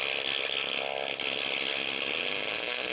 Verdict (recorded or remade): recorded